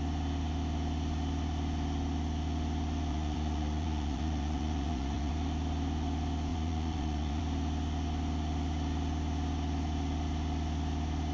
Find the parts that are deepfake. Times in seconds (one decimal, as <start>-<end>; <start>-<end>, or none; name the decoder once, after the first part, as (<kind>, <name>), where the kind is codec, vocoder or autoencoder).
3.1-5.3 (vocoder, Vocos); 6.5-7.4